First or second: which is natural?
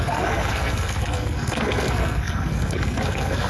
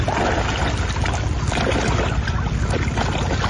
second